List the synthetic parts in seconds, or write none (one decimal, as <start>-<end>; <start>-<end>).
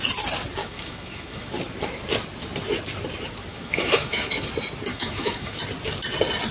0.6-1.5; 3.5-4.5; 4.9-5.6